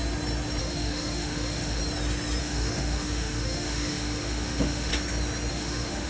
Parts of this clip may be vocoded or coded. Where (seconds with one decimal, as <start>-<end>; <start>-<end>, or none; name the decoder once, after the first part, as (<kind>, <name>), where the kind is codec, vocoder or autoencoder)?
0.6-1.8 (autoencoder, DAC-VAE); 2.4-4.9; 5.5-6.1